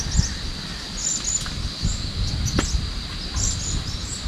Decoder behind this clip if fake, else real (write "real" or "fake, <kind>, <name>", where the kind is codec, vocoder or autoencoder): real